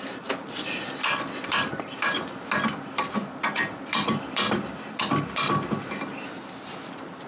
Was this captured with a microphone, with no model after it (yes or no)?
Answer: yes